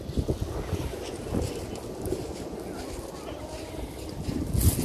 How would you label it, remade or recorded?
recorded